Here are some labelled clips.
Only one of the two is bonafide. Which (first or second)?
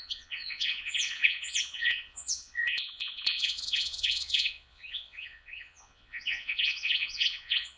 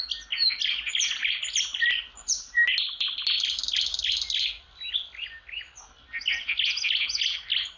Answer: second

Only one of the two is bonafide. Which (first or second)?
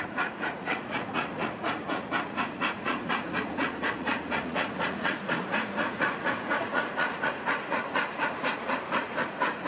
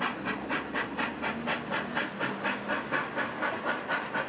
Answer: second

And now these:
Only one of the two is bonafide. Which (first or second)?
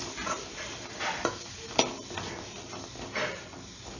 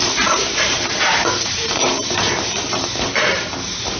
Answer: first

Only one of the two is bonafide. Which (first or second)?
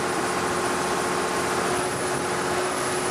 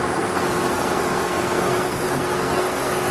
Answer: first